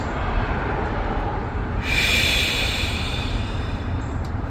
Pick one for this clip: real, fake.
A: fake